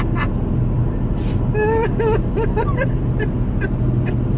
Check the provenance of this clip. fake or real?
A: real